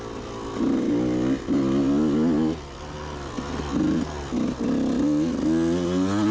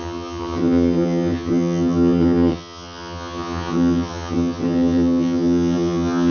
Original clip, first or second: first